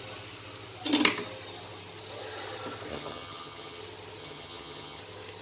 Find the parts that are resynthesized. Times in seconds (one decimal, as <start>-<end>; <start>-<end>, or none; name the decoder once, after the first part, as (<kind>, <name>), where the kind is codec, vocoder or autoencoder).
2.9-3.8 (vocoder, HiFi-GAN); 4.2-5.0